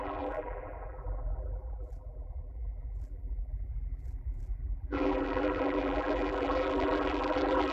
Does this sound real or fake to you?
fake